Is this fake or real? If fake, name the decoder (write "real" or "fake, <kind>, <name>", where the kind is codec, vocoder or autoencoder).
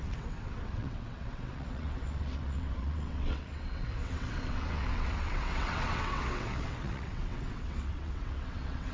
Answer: fake, vocoder, WaveNeXt